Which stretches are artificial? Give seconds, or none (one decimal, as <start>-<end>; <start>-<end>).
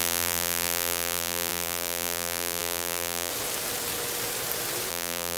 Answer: 0.0-3.3; 4.9-5.4